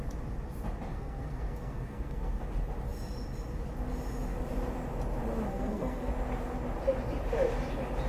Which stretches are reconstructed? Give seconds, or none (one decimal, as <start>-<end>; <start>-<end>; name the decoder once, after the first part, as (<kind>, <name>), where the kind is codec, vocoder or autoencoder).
0.9-2.4 (codec, SNAC); 5.5-6.1